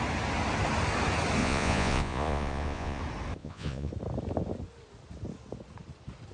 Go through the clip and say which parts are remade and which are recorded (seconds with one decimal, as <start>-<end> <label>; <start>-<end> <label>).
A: 0.0-1.4 recorded; 1.4-3.0 remade; 3.0-3.4 recorded; 3.4-3.9 remade; 3.9-6.3 recorded